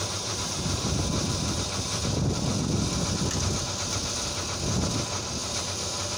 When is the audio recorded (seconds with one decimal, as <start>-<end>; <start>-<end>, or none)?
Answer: 1.9-5.6